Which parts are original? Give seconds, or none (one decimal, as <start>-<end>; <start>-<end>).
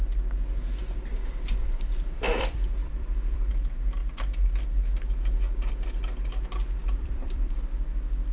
0.0-0.8; 3.5-6.8; 7.5-8.3